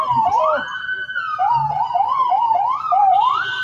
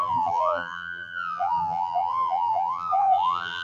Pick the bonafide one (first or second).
first